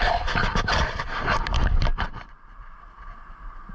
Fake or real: real